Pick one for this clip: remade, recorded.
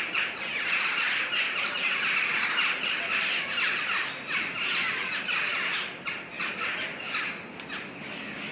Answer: recorded